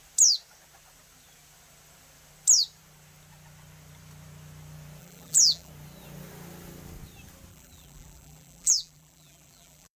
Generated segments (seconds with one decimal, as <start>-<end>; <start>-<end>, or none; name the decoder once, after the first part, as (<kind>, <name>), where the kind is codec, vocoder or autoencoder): 5.0-5.7 (vocoder, BigVGAN v2); 7.5-10.0